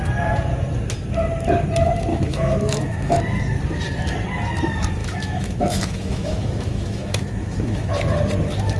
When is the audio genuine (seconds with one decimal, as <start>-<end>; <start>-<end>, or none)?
0.0-2.1; 3.2-5.0; 7.9-8.8